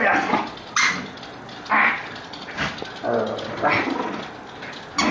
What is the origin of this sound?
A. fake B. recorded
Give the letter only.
B